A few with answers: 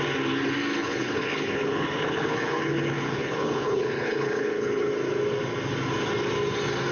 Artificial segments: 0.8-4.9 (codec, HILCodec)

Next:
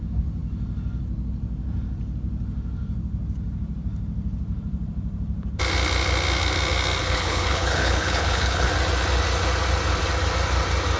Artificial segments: 7.0-8.7 (codec, HILCodec)

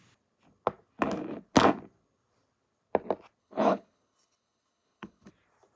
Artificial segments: 3.4-5.3 (codec, HILCodec)